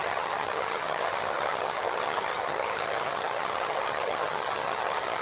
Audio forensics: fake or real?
fake